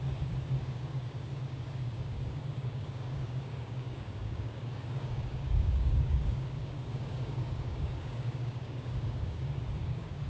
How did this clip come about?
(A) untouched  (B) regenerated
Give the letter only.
B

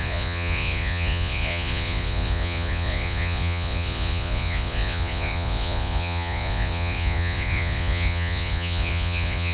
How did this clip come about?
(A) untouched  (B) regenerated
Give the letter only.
B